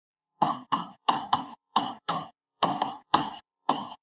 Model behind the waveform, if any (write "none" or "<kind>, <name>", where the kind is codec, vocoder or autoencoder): codec, SNAC